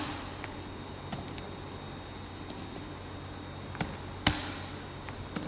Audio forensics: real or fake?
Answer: real